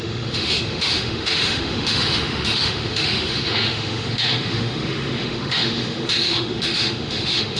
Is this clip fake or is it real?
fake